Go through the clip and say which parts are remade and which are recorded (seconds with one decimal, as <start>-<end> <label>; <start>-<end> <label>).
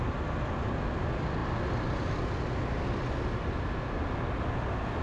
0.0-5.0 recorded